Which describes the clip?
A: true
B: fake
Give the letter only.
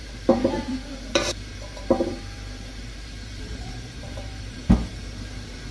B